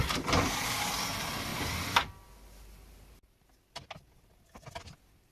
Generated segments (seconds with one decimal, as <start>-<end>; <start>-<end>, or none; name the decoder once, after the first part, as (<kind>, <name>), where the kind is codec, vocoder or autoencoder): none